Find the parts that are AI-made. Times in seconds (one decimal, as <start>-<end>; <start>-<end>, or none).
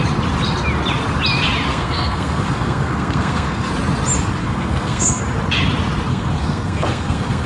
1.7-3.7; 4.4-5.2; 6.1-7.5